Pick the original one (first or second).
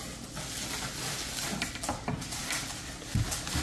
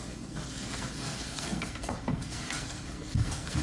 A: first